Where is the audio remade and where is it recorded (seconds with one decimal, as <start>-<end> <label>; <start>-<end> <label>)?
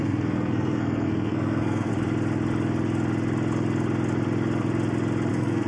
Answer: 0.0-1.9 remade; 1.9-5.3 recorded; 5.3-5.7 remade